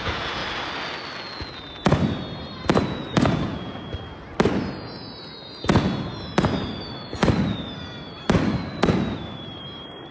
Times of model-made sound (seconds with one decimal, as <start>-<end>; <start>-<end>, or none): 0.0-0.4; 2.8-3.9; 4.7-6.1